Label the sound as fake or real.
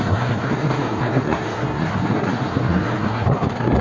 fake